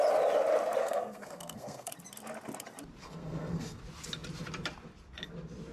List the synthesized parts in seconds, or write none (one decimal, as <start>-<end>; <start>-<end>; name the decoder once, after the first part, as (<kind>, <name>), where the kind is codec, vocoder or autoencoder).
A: 0.8-1.9 (codec, SNAC); 3.0-3.8